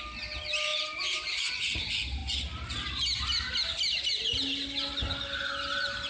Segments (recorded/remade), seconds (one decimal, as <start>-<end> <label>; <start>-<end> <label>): 0.0-0.7 recorded; 0.7-1.5 remade; 1.5-6.1 recorded